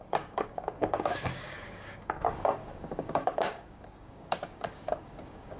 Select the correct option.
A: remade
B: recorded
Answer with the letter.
A